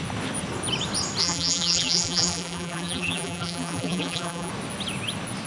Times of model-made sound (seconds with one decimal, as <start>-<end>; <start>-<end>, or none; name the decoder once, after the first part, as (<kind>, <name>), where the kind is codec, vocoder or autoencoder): 1.2-4.5 (vocoder, BigVGAN v2)